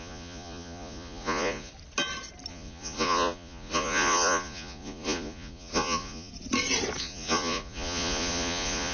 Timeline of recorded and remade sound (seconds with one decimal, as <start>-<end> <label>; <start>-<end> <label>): 0.0-1.7 remade; 1.7-2.5 recorded; 2.5-6.3 remade; 6.3-7.0 recorded; 7.0-8.9 remade